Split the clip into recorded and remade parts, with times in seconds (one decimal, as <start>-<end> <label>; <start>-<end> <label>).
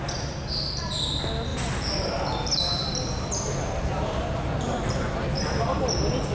0.0-1.5 recorded; 1.5-5.3 remade; 5.3-6.3 recorded